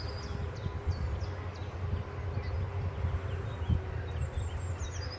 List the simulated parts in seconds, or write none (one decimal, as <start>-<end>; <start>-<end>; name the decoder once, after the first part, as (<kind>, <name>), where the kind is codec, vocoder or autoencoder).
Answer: none